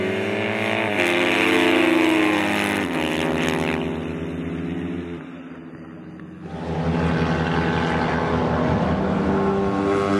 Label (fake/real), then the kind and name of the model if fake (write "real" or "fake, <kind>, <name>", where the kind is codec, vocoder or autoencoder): real